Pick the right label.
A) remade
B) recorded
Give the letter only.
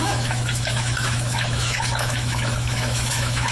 A